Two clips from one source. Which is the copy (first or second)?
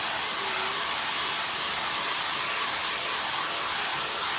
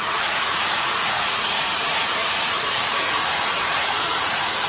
second